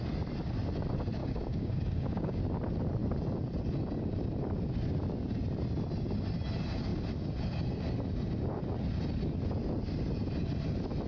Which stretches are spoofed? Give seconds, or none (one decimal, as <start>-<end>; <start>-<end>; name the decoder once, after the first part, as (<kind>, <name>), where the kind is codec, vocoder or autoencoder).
1.2-2.4 (codec, DAC)